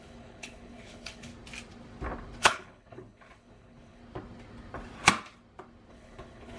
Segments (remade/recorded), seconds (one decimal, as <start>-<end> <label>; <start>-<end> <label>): 0.0-1.3 remade; 1.3-2.4 recorded; 2.4-4.0 remade; 4.0-5.9 recorded; 5.9-6.6 remade